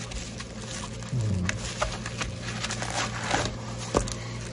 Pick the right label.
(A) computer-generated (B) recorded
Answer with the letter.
B